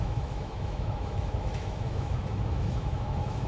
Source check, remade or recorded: remade